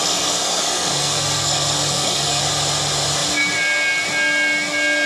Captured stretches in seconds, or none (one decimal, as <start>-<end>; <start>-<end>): 2.4-5.1